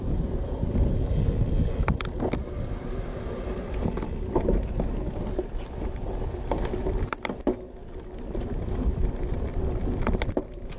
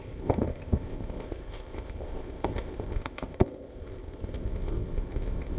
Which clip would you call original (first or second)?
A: first